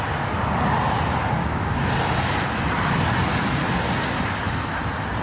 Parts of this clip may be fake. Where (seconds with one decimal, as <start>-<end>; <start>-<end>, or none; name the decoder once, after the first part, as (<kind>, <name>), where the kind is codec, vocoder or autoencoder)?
1.4-1.9 (codec, DAC)